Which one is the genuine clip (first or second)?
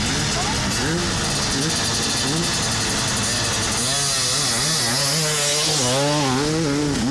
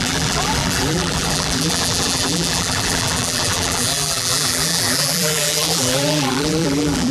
first